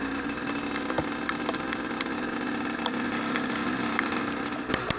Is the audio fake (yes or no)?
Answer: no